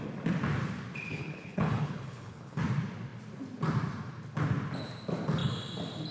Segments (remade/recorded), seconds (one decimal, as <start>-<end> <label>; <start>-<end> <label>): 0.0-1.1 recorded; 1.1-2.6 remade; 2.6-6.1 recorded